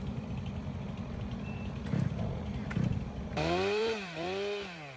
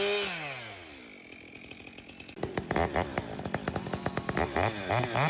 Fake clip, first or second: first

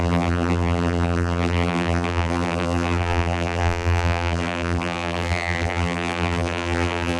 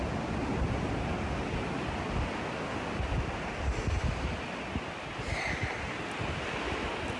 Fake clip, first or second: first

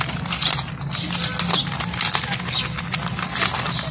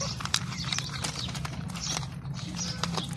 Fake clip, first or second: second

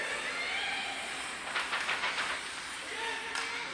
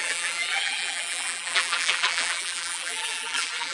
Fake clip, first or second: second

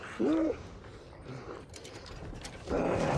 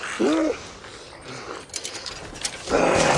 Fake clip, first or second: first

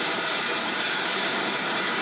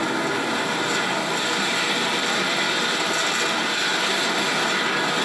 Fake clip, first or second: first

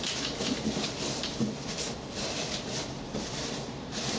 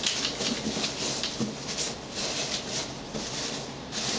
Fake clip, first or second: first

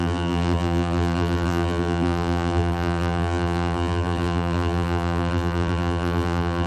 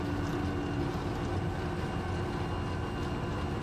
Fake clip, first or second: first